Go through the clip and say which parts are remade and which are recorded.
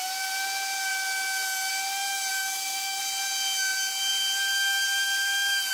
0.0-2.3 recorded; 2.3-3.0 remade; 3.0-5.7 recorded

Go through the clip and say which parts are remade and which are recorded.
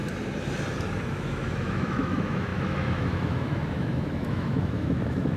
0.0-1.1 recorded; 1.1-5.4 remade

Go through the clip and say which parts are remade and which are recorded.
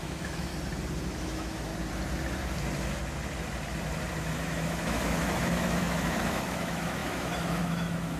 0.0-0.5 remade; 0.5-1.2 recorded; 1.2-1.7 remade; 1.7-4.4 recorded; 4.4-8.2 remade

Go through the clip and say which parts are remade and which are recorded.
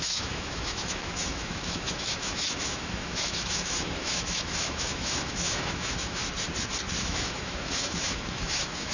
0.0-6.2 remade; 6.2-7.0 recorded; 7.0-8.9 remade